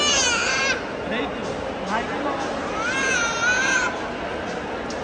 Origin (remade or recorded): recorded